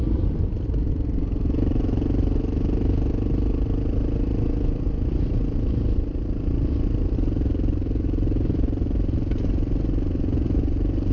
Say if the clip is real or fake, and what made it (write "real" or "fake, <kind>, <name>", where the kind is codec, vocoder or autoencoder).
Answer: real